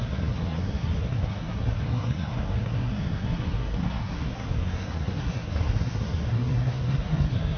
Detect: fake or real fake